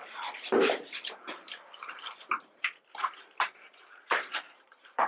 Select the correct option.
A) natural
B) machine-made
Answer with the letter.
B